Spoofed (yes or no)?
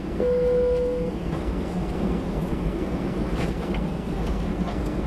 yes